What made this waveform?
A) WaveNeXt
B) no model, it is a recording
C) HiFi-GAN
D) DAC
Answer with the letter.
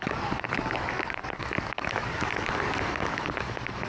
D